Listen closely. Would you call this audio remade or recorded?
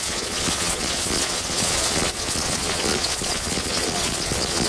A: remade